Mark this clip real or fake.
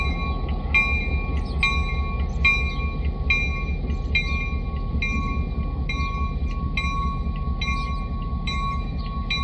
real